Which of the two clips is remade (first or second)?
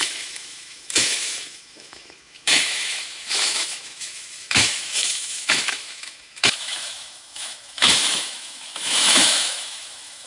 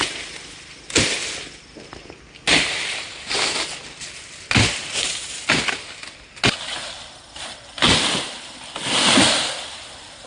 first